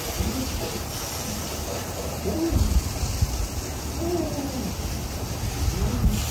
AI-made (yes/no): no